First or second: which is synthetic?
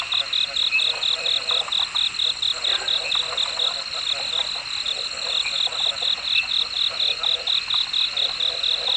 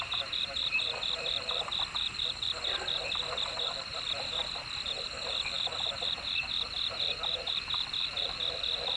second